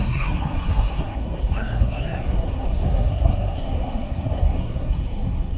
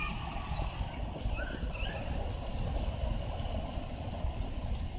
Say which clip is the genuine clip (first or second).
second